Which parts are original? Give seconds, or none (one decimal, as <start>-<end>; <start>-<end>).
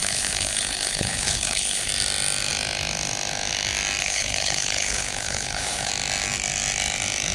1.9-4.0; 5.9-7.3